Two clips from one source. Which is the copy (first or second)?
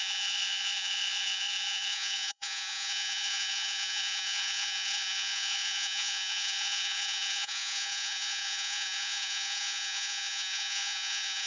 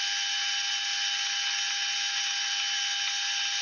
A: first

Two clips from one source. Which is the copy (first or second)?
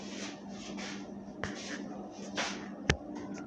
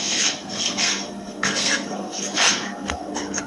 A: second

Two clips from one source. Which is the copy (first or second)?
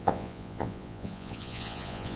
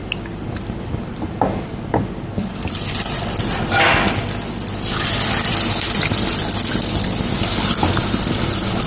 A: first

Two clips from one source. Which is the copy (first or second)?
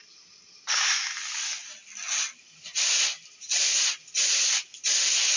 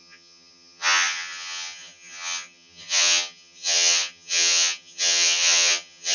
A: second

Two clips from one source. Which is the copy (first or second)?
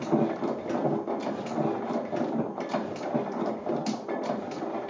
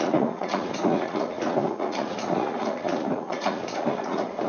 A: second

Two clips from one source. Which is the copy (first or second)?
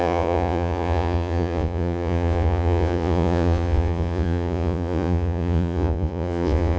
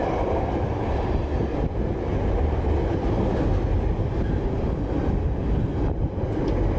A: first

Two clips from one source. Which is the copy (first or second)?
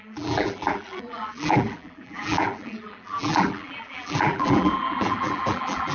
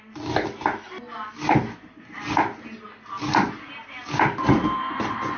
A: first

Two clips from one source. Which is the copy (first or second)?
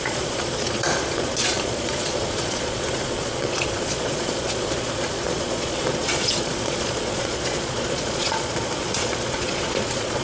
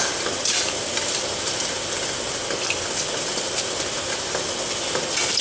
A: first